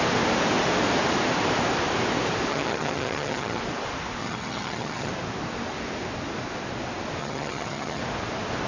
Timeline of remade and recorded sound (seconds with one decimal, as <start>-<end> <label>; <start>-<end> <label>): 0.0-2.5 recorded; 2.5-3.6 remade; 3.6-4.2 recorded; 4.2-5.1 remade; 5.1-7.2 recorded; 7.2-8.0 remade; 8.0-8.7 recorded